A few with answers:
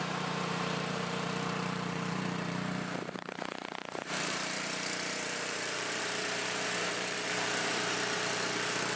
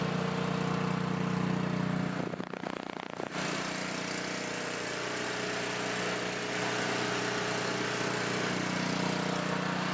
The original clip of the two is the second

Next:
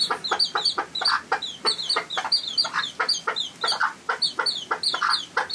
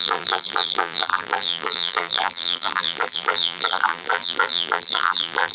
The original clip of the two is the first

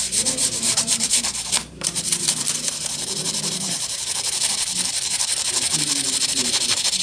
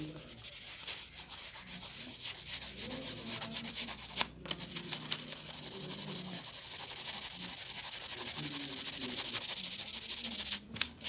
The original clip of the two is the second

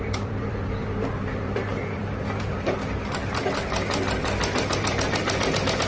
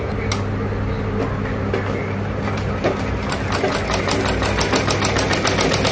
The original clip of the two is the second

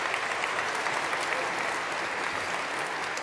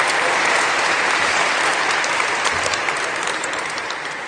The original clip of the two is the first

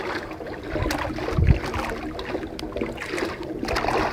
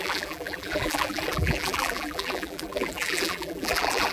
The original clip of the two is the first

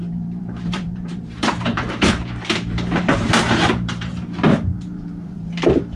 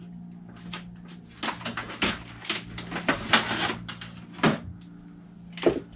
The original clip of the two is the second